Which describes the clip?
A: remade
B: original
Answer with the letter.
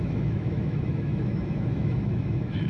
A